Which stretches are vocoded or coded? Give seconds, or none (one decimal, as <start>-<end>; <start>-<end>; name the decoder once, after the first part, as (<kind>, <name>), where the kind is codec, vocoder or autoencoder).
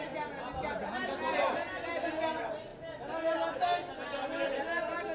none